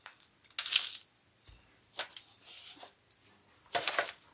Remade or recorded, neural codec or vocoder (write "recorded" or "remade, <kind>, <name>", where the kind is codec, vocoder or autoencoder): recorded